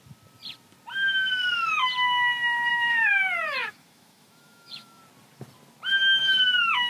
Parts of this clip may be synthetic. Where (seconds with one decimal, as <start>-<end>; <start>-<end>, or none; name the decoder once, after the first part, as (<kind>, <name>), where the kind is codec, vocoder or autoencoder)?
2.7-5.0 (autoencoder, DAC-VAE); 6.2-6.9